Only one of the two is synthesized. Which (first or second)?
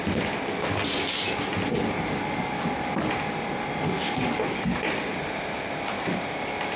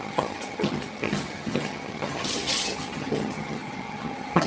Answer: second